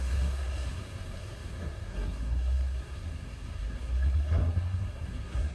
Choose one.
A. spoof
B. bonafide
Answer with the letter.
A